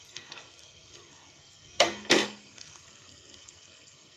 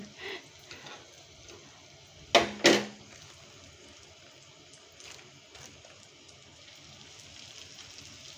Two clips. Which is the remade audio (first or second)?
first